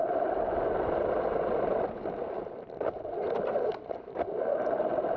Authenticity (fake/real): real